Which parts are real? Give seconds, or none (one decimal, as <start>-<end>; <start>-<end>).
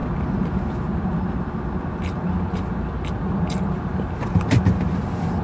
0.0-5.4